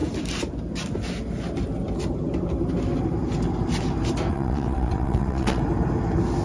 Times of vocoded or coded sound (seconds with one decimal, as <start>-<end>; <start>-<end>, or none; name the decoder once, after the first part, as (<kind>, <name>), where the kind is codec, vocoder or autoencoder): 4.3-5.6 (vocoder, WaveNeXt)